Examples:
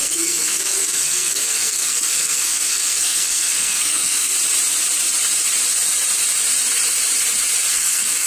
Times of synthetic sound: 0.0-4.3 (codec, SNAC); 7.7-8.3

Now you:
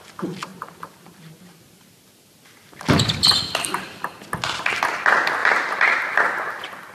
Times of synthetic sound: 5.4-6.2 (vocoder, BigVGAN v2)

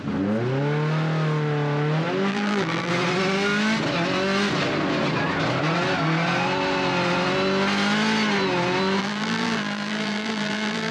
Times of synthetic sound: 2.3-2.9 (vocoder, BigVGAN v2); 9.0-10.9

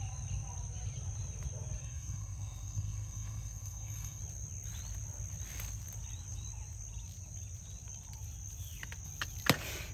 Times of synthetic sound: 1.8-4.2 (codec, SNAC)

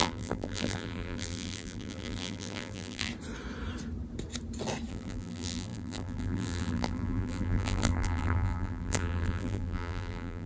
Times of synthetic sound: 0.0-3.1 (vocoder, BigVGAN v2); 4.9-10.5

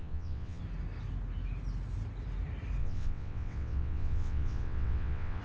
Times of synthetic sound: 0.0-0.6 (vocoder, WaveNeXt); 2.8-5.4